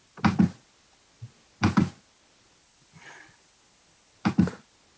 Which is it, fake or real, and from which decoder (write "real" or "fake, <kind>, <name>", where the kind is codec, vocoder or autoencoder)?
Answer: real